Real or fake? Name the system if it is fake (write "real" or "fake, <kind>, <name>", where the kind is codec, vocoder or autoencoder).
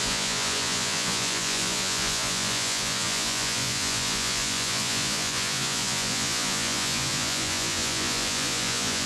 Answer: fake, vocoder, Vocos